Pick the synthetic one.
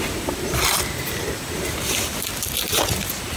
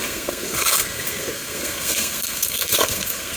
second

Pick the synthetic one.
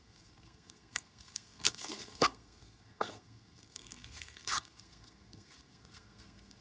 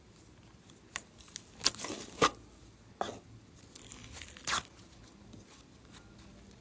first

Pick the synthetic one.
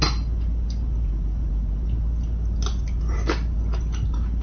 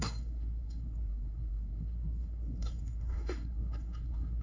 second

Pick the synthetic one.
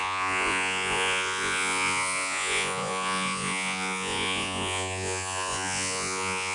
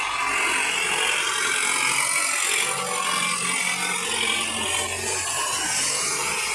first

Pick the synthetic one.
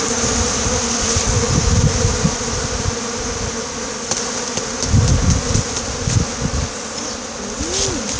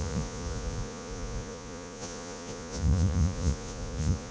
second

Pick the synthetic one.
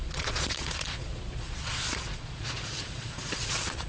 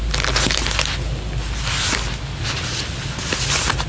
first